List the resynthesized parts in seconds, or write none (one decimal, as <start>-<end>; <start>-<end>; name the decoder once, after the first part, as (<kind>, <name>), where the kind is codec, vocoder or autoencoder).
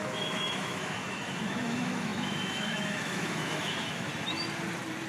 0.0-4.1 (autoencoder, DAC-VAE)